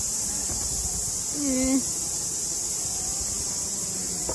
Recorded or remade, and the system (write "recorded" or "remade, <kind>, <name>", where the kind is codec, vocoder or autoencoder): recorded